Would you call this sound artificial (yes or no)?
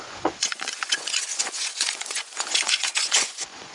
yes